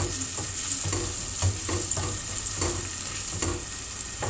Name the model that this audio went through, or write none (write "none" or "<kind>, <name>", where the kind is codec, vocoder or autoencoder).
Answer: none